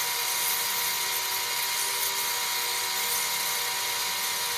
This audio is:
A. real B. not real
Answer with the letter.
A